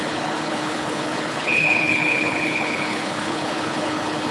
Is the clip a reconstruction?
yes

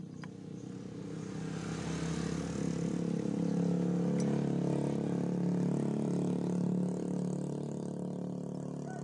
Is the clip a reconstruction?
no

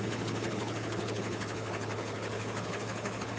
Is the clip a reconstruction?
yes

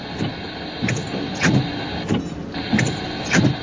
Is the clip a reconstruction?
no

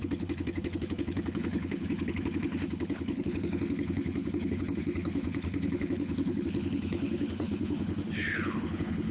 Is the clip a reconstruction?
yes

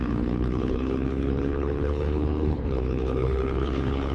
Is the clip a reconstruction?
yes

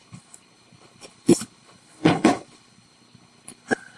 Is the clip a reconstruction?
yes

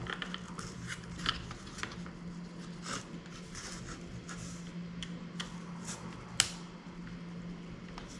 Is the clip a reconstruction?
no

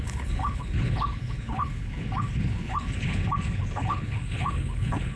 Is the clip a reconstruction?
yes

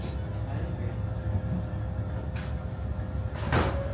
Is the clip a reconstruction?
no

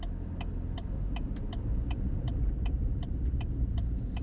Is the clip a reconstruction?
no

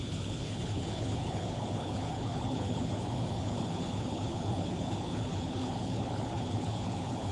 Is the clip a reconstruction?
yes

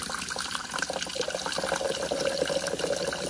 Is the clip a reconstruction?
no